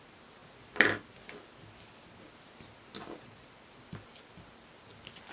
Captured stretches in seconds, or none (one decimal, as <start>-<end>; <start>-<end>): 0.0-5.3